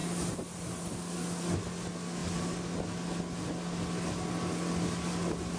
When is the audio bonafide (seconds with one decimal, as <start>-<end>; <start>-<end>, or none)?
0.0-5.6